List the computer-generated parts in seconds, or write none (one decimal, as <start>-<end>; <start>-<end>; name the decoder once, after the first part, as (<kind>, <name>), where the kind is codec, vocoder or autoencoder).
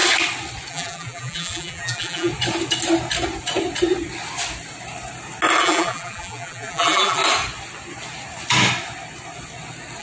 0.7-2.3 (vocoder, BigVGAN v2); 5.6-7.2